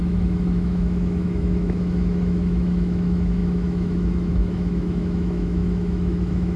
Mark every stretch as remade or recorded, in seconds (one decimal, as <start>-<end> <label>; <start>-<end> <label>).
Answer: 0.0-6.6 remade